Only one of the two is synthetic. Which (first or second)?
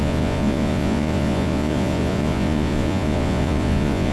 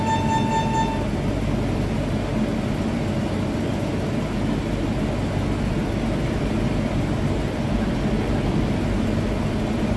first